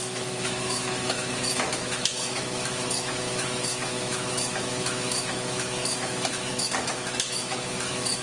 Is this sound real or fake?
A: fake